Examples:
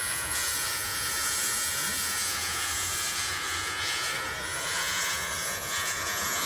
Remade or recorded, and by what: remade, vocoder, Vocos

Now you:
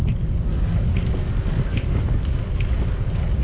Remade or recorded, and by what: recorded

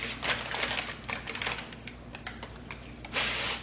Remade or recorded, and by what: recorded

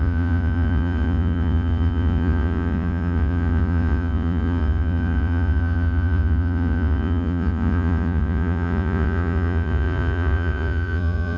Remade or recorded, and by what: remade, vocoder, Vocos